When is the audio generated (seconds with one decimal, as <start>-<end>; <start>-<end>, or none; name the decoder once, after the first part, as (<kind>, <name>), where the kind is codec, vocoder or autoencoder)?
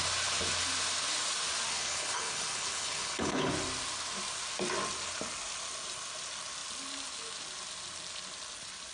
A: 1.7-3.5 (codec, HILCodec)